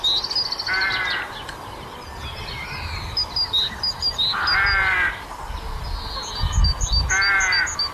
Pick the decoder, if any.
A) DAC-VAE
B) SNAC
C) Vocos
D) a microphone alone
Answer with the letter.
D